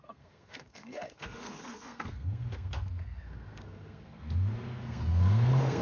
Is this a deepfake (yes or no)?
yes